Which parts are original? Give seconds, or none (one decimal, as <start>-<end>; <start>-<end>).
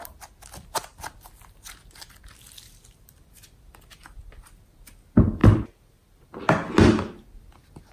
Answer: 0.0-7.9